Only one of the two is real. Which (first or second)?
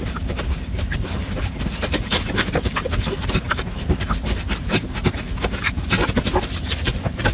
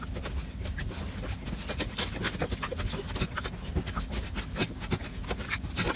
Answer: second